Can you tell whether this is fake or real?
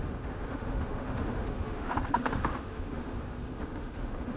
fake